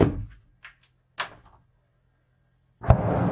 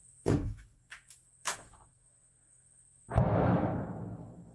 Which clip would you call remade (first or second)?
second